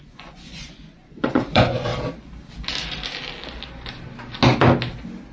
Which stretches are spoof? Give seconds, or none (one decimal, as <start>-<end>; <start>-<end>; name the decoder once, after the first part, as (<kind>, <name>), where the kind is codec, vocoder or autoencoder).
0.0-1.9 (vocoder, Vocos)

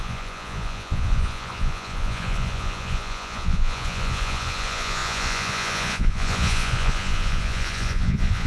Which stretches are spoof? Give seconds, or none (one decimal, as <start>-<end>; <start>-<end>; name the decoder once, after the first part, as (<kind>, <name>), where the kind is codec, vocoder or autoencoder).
0.0-8.5 (vocoder, Vocos)

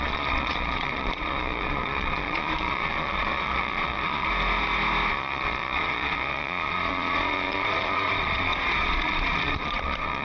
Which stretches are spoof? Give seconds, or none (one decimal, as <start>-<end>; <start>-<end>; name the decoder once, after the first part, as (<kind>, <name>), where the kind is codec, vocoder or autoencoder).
0.0-4.3 (vocoder, Vocos); 5.1-10.2

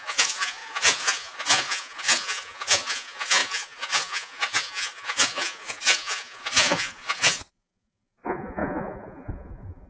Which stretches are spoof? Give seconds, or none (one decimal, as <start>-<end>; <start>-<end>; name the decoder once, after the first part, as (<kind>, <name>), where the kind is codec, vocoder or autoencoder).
0.0-9.9 (vocoder, Vocos)